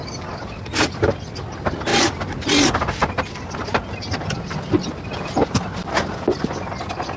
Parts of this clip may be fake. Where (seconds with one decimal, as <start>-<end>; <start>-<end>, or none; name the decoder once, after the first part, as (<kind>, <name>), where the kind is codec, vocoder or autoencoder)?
none